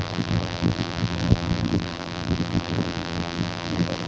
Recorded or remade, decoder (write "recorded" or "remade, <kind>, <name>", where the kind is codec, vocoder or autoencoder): remade, vocoder, BigVGAN v2